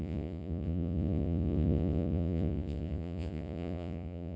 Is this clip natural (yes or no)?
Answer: no